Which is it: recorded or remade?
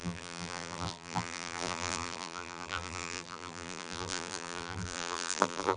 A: remade